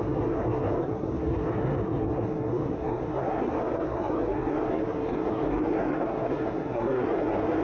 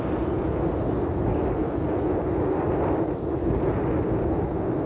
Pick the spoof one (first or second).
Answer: first